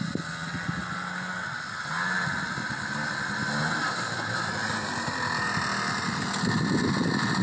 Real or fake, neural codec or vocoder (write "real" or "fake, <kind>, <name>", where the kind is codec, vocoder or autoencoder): real